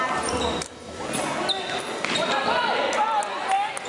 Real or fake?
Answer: real